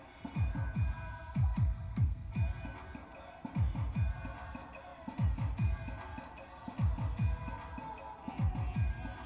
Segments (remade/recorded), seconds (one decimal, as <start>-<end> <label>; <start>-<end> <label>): 0.0-1.4 recorded; 1.4-2.3 remade; 2.3-9.3 recorded